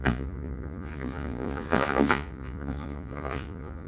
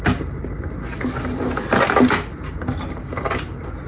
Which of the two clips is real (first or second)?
second